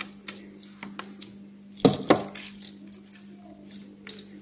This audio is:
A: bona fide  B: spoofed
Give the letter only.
A